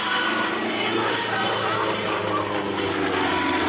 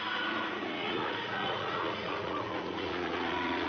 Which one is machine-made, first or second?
second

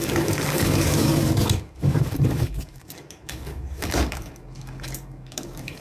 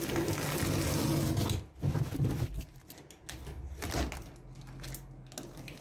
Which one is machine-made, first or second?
first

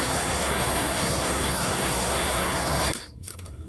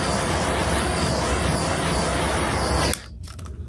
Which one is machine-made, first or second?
first